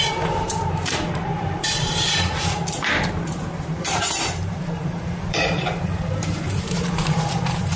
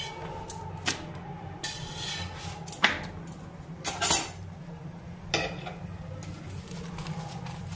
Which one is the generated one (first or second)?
first